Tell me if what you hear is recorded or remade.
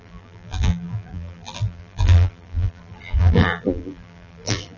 remade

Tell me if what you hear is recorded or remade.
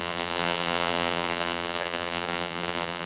remade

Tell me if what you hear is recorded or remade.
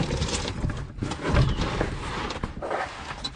recorded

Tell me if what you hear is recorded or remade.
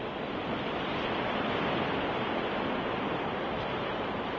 remade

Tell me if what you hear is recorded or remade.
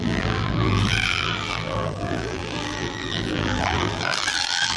remade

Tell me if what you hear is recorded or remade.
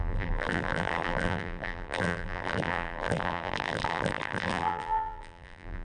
remade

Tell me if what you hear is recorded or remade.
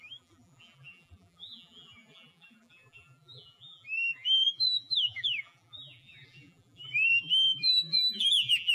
remade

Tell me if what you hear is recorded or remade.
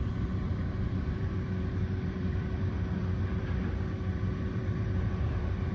remade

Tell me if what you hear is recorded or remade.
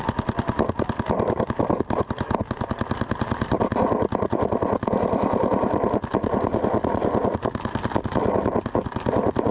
recorded